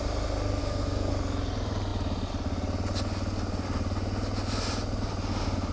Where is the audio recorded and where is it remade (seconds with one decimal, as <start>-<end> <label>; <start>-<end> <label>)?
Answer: 0.0-0.6 recorded; 0.6-1.1 remade; 1.1-5.7 recorded